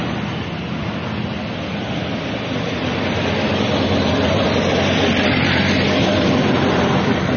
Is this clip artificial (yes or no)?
yes